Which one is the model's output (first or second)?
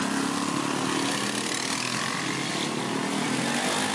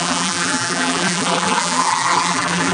second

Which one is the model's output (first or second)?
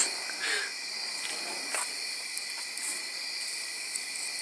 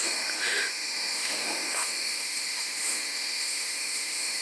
second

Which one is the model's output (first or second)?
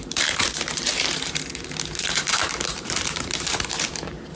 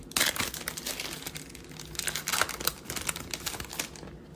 first